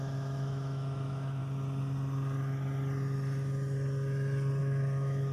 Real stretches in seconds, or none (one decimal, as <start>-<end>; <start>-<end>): 1.4-4.6

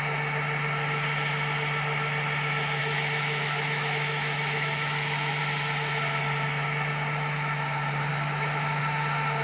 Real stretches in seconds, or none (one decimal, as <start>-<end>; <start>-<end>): 0.0-2.8; 5.4-8.1; 8.8-9.4

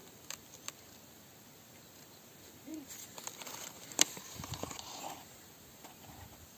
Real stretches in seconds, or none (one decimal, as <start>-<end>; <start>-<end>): 0.0-6.6

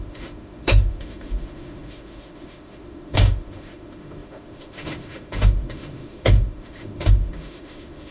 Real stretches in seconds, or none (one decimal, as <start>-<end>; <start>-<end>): none

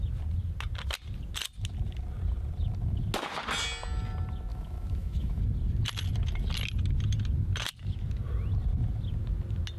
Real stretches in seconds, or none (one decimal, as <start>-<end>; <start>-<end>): 0.0-4.5; 5.4-9.8

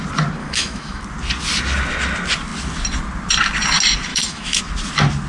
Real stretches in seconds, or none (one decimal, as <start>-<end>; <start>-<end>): 0.0-0.4; 1.0-4.1; 4.6-5.3

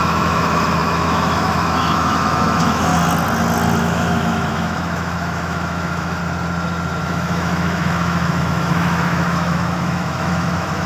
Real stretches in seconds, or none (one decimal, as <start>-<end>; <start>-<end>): 2.9-3.8; 6.2-7.0

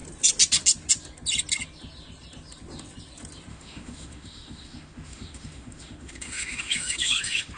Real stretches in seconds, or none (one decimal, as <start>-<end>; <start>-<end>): 0.0-3.5